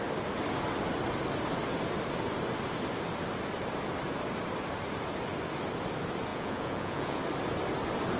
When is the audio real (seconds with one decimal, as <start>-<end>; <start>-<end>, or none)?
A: 0.0-6.3; 7.2-8.2